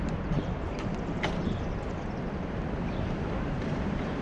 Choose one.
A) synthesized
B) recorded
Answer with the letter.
A